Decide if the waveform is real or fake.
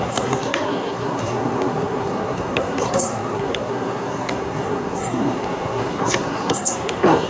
fake